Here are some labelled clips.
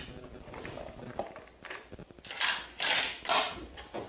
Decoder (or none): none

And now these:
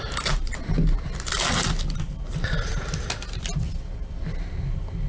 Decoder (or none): none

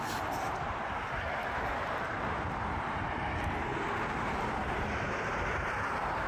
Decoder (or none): vocoder, BigVGAN v2